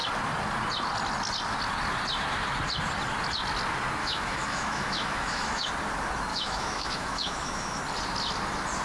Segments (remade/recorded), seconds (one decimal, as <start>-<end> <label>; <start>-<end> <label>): 0.0-4.0 recorded; 4.0-5.7 remade; 5.7-6.3 recorded; 6.3-7.8 remade; 7.8-8.8 recorded